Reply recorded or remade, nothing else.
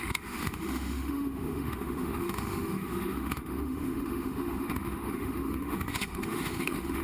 remade